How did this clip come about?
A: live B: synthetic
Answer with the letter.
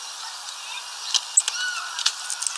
A